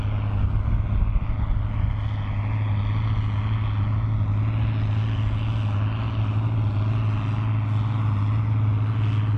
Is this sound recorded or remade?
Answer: recorded